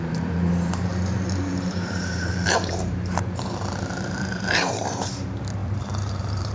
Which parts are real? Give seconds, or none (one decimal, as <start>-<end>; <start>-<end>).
none